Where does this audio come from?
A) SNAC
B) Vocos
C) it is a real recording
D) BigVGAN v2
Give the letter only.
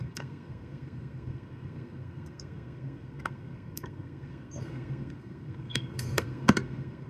A